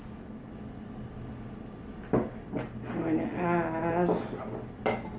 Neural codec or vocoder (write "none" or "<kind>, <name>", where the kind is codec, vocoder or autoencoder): none